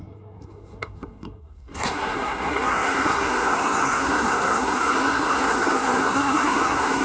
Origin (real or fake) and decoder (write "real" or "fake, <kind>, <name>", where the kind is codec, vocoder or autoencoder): fake, codec, SNAC